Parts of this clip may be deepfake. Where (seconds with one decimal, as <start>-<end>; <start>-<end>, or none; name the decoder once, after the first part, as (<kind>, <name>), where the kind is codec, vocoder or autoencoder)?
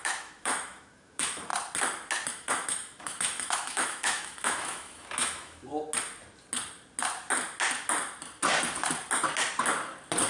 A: 0.0-1.5 (autoencoder, DAC-VAE); 2.3-5.7